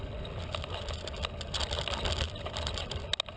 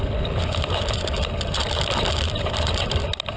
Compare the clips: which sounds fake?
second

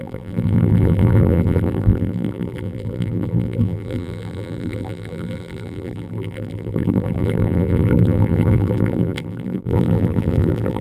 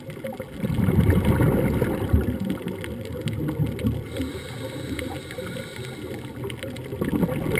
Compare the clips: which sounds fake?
first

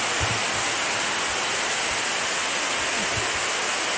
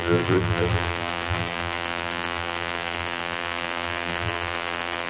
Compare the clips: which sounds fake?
second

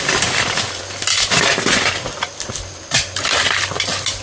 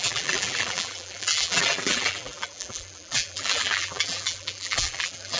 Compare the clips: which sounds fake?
second